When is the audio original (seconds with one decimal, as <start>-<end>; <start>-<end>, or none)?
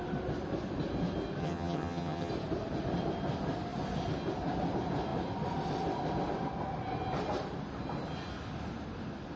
0.0-1.4; 2.3-9.4